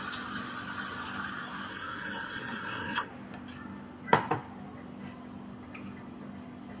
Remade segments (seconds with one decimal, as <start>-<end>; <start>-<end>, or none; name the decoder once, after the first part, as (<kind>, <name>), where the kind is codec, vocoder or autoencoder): 1.7-3.1 (codec, SNAC)